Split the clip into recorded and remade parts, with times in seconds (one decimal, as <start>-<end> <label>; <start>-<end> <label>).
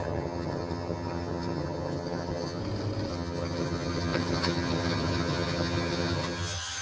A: 0.0-2.6 remade; 2.6-3.1 recorded; 3.1-6.8 remade